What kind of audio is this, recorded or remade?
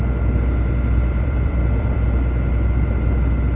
remade